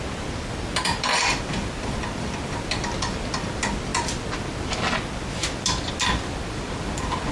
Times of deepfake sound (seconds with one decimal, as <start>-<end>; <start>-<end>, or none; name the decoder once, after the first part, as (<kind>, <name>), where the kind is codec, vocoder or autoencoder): none